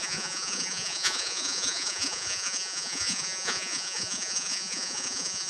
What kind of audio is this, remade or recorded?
remade